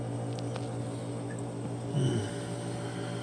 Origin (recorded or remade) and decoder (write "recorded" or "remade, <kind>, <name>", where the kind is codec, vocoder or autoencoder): recorded